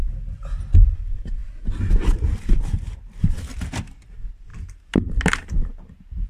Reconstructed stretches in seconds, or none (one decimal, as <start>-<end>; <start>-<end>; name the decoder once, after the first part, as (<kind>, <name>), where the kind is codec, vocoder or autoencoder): none